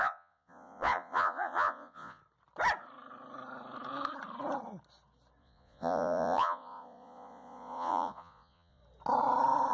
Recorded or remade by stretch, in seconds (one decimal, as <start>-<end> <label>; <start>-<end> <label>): 0.0-2.2 remade; 2.2-5.4 recorded; 5.4-8.8 remade; 8.8-9.7 recorded